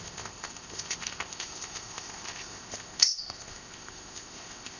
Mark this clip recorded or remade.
remade